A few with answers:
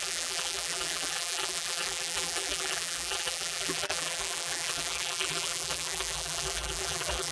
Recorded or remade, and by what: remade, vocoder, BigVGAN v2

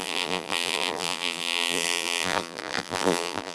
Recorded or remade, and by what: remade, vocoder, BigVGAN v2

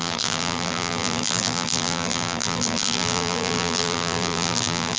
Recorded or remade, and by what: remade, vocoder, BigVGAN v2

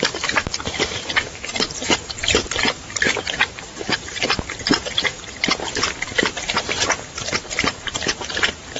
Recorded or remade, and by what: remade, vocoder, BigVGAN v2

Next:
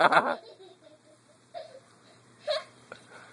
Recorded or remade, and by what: remade, vocoder, BigVGAN v2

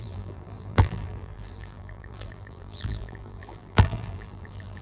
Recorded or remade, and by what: remade, vocoder, BigVGAN v2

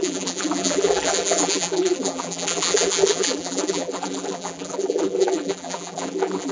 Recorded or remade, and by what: remade, vocoder, BigVGAN v2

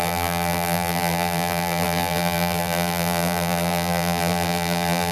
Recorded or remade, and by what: remade, vocoder, BigVGAN v2